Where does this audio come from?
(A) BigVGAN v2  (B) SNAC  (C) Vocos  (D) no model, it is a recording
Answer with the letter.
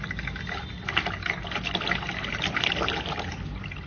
D